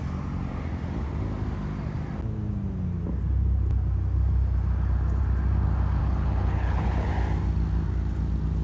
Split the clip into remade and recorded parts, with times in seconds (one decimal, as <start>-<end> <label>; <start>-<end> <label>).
0.0-6.0 recorded; 6.0-7.1 remade; 7.1-8.6 recorded